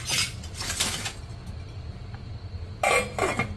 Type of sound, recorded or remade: recorded